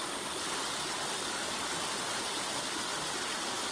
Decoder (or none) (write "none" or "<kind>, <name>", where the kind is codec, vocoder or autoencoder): none